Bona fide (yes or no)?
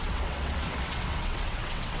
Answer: no